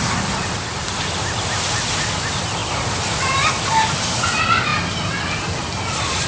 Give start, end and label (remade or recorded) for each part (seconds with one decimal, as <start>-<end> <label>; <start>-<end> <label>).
0.0-6.3 recorded